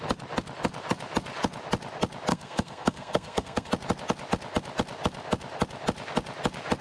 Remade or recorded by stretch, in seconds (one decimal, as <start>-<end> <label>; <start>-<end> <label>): 0.0-2.3 recorded; 2.3-3.7 remade; 3.7-6.8 recorded